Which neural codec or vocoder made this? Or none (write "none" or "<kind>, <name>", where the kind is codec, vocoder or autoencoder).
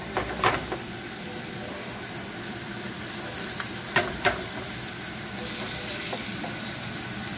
none